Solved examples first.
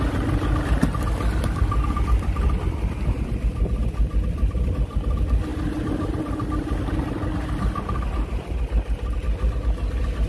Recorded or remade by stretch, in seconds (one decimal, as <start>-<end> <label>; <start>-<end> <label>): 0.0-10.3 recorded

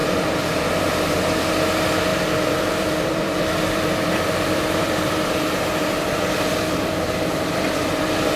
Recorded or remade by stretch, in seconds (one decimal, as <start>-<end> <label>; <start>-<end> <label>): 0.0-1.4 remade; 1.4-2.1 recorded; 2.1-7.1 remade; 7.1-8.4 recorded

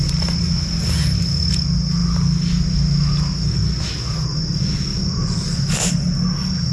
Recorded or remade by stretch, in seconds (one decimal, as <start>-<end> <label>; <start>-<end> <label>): 0.0-4.9 recorded; 4.9-5.9 remade; 5.9-6.7 recorded